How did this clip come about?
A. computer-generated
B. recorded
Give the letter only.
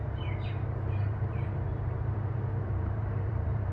A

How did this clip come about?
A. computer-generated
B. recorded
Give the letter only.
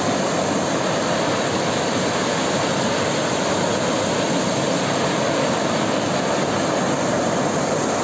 B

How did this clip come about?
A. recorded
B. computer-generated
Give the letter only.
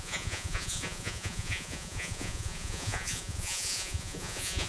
B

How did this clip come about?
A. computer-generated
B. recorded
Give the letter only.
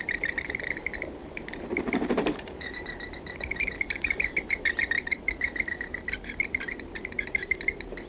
A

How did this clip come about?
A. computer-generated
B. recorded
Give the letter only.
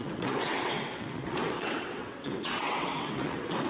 A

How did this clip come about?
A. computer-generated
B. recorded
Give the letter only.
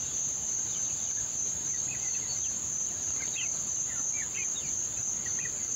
B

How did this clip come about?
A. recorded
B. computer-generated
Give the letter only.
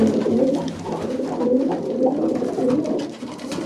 A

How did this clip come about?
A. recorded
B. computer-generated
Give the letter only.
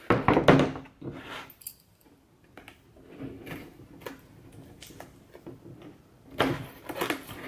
A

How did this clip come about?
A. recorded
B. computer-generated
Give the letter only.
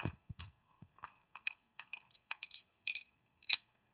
B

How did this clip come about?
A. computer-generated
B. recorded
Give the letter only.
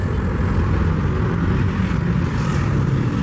B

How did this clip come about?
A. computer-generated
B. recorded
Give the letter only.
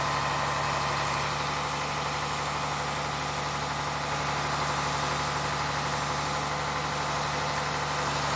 B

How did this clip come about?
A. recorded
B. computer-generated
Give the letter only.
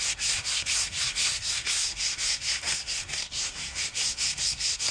B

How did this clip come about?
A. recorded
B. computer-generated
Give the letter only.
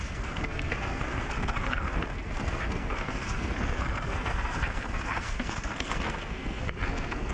B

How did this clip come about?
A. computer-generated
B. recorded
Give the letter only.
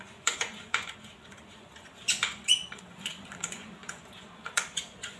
A